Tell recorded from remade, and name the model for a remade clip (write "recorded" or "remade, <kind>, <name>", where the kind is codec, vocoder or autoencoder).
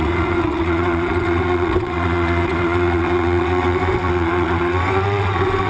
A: remade, vocoder, WaveNeXt